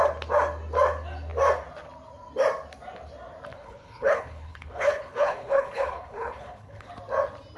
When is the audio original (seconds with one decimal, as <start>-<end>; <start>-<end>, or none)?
0.0-3.5; 6.9-7.6

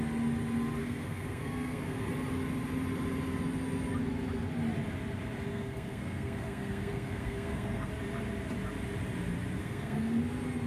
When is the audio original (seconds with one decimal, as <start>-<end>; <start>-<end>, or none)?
0.0-0.8; 2.1-5.5; 7.9-9.6; 10.2-10.7

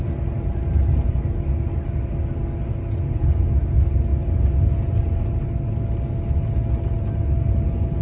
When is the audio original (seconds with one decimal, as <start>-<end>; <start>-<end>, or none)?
0.0-8.0

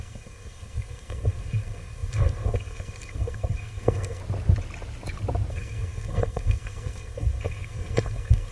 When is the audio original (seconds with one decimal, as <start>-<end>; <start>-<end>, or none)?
4.2-5.5

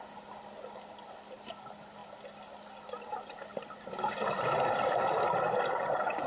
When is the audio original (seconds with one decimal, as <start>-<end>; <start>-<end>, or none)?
0.0-3.5